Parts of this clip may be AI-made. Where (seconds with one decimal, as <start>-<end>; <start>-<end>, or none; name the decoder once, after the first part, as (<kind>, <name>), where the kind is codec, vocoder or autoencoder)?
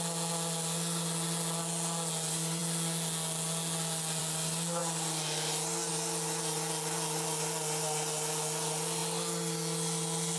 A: none